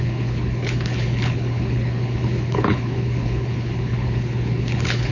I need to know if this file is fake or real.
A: fake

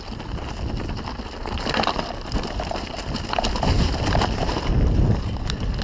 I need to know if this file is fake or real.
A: real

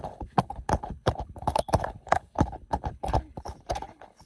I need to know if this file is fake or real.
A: fake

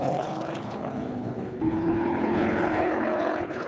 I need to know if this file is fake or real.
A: fake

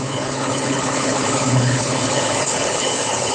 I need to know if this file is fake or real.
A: fake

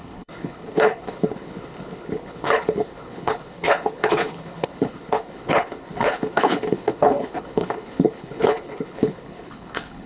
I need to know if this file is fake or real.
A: fake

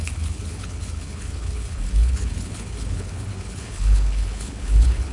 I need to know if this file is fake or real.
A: fake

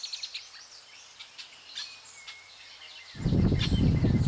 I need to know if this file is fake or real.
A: real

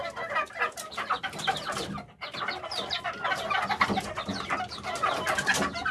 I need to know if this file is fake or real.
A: real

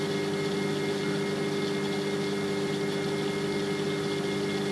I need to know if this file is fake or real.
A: real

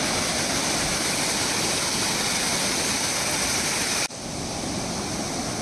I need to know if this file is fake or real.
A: real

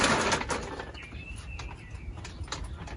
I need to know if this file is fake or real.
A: real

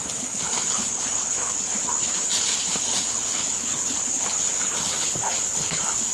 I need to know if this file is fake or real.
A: fake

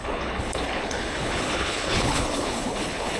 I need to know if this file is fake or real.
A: fake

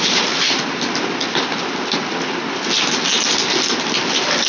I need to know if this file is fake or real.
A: real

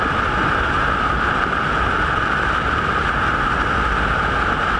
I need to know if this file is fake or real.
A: real